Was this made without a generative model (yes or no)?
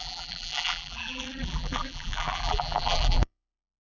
no